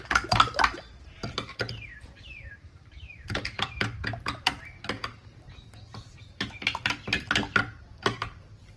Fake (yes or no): yes